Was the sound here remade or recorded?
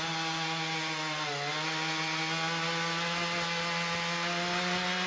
recorded